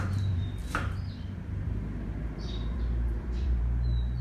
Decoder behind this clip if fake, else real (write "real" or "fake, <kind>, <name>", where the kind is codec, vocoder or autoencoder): fake, vocoder, BigVGAN v2